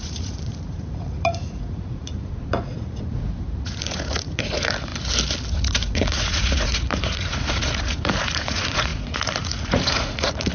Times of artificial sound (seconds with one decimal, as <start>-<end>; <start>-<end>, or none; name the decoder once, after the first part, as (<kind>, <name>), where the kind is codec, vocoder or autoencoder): 0.0-4.9 (vocoder, Vocos); 5.5-10.5